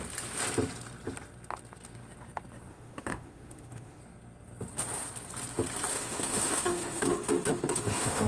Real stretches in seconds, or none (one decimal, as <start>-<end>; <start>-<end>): 0.0-2.7; 4.0-5.9